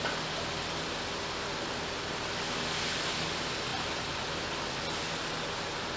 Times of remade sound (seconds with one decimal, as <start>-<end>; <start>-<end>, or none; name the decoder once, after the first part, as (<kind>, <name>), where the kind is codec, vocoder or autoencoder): none